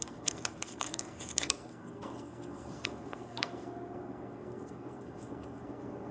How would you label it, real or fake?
fake